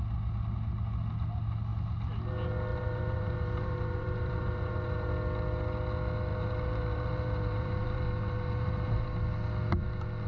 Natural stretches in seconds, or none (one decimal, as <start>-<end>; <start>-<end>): 0.0-2.7; 5.1-6.3; 9.3-10.3

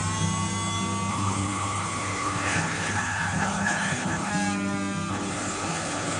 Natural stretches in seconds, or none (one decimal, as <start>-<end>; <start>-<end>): 0.0-1.1; 4.3-5.1